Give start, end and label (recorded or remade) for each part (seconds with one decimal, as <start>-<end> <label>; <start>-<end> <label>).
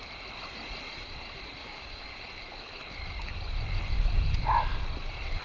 0.0-1.6 recorded; 1.6-2.2 remade; 2.2-5.4 recorded